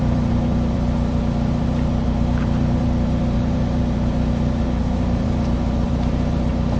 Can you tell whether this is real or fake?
fake